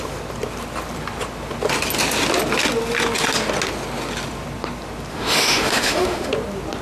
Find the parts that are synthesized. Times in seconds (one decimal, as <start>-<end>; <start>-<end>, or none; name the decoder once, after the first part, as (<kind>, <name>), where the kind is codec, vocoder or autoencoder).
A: 5.1-6.3 (autoencoder, DAC-VAE)